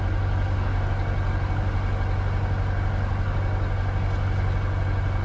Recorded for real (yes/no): yes